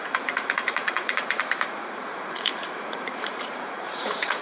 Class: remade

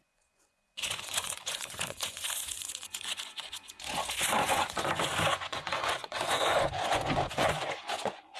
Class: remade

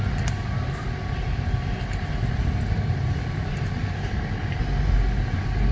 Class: recorded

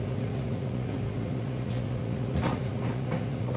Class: remade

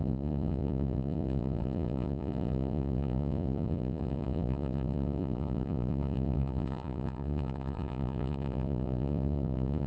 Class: remade